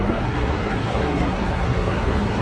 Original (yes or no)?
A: no